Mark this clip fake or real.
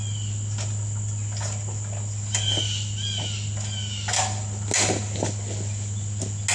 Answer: real